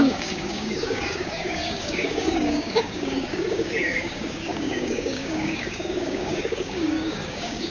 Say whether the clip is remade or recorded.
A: remade